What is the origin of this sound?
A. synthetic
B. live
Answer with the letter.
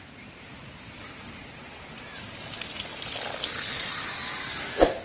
B